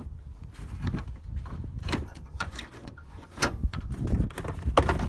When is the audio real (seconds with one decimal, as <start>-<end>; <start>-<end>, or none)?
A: 0.0-2.1; 3.9-5.1